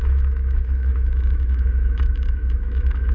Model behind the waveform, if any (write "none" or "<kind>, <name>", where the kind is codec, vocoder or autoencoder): autoencoder, DAC-VAE